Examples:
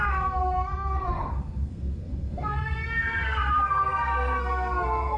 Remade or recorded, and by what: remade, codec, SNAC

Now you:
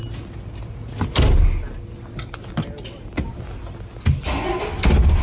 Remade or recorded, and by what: recorded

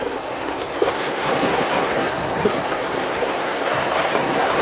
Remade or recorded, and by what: remade, codec, SNAC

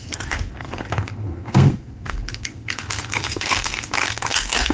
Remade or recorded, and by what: remade, codec, SNAC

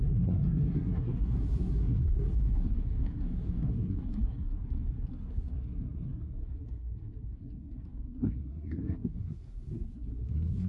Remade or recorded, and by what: remade, codec, SNAC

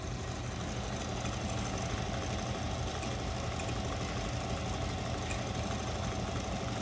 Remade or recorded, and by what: recorded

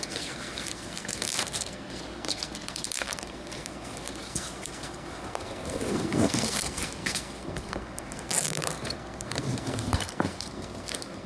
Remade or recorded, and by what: remade, codec, SNAC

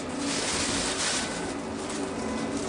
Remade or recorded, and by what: recorded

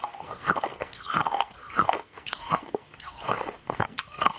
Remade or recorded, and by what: remade, codec, SNAC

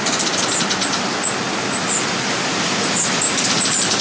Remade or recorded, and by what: recorded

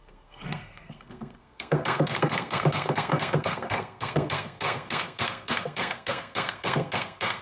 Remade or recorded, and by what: remade, codec, SNAC